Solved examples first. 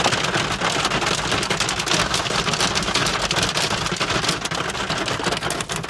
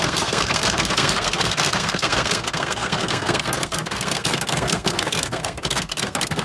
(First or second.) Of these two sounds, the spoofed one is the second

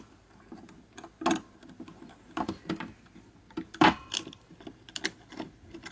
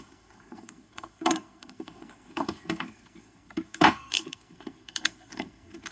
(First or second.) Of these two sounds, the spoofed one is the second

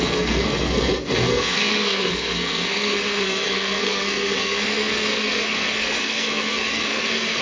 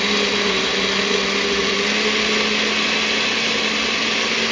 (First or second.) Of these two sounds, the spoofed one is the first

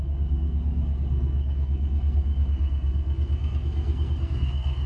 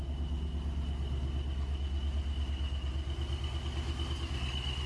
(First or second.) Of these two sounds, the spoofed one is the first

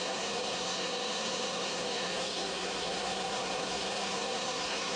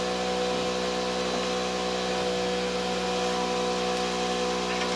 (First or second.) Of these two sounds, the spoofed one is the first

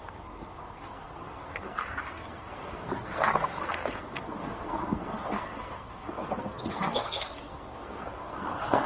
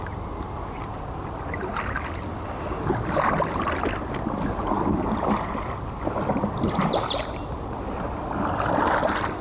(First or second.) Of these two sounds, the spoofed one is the first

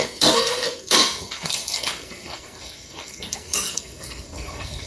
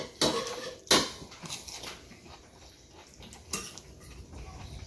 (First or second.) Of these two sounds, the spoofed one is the first